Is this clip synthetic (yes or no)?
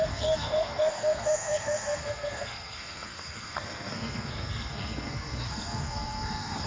yes